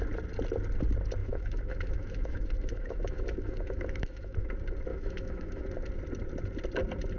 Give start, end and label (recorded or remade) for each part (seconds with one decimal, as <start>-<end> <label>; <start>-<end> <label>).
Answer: 0.0-1.2 recorded; 1.2-4.5 remade; 4.5-4.9 recorded; 4.9-5.6 remade; 5.6-7.2 recorded